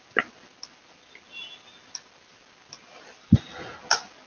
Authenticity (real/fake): real